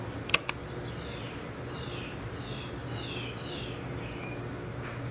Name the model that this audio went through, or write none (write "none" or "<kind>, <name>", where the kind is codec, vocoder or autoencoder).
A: none